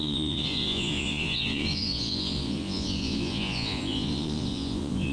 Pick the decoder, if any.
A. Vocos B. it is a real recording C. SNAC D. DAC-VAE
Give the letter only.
A